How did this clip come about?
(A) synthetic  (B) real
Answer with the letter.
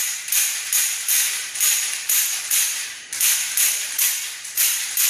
A